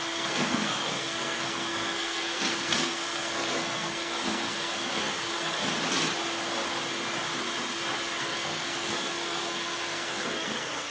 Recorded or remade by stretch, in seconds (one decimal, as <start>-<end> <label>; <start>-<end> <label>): 0.0-5.6 remade; 5.6-8.2 recorded; 8.2-10.9 remade

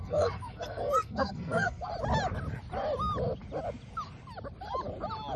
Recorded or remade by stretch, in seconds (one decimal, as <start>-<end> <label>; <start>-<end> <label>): 0.0-1.9 remade; 1.9-5.4 recorded

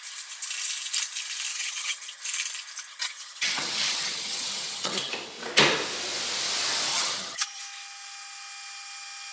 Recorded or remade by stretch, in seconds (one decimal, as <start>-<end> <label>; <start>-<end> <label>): 0.0-1.5 recorded; 1.5-2.2 remade; 2.2-2.9 recorded; 2.9-5.1 remade; 5.1-6.9 recorded; 6.9-7.6 remade; 7.6-9.3 recorded